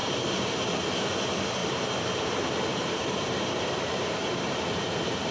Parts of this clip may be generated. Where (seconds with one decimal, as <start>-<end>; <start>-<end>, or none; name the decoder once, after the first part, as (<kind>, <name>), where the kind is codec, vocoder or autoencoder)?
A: 1.6-4.8 (vocoder, BigVGAN v2)